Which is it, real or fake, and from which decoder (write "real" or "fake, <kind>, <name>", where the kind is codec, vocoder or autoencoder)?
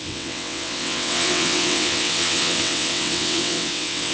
fake, vocoder, WaveNeXt